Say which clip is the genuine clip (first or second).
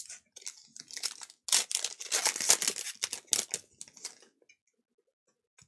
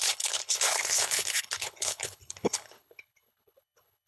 first